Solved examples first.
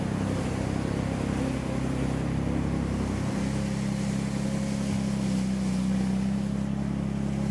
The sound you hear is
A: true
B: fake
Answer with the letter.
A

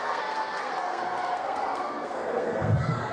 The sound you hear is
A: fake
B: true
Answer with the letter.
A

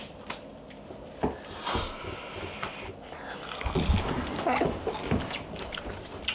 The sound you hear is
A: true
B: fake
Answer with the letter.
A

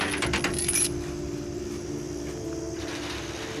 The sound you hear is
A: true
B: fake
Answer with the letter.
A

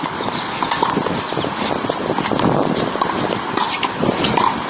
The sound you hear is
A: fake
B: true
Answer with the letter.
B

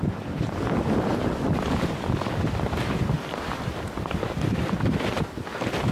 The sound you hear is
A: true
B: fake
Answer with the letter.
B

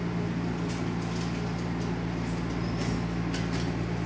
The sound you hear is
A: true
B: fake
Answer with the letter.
A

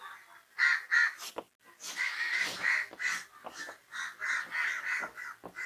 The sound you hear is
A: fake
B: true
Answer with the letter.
B